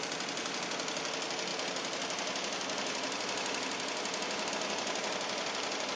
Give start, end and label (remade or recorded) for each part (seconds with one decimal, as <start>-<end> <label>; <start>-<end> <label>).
0.0-6.0 recorded